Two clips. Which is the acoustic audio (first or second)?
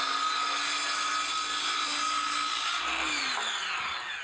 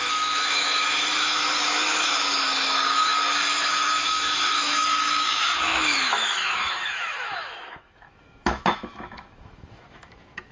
first